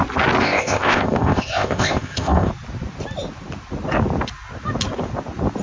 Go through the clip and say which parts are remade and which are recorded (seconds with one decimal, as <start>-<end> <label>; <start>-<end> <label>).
0.0-0.4 recorded; 0.4-2.5 remade; 2.5-5.6 recorded